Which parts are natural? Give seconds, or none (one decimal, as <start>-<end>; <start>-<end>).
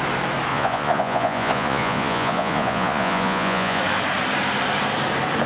0.0-0.5; 3.8-5.5